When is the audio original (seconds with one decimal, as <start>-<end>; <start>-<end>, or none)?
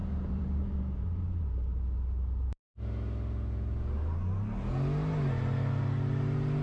0.8-6.6